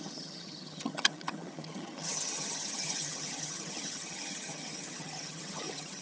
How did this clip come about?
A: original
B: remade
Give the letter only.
B